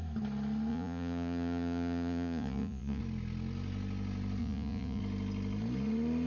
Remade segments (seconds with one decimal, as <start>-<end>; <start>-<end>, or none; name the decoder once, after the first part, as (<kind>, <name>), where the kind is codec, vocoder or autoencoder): 0.7-3.0 (vocoder, Vocos); 4.4-5.0